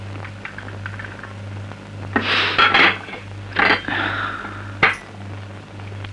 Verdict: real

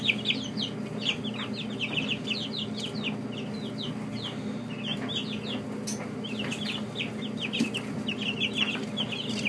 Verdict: real